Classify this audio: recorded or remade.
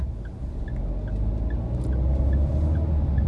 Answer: recorded